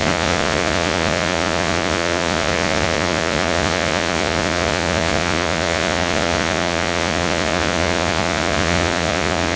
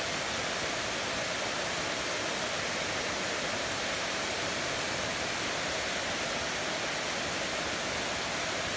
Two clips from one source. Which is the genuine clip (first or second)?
second